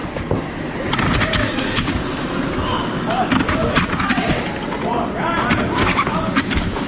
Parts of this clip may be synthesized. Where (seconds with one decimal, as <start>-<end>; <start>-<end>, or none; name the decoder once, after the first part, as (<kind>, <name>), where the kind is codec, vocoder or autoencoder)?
none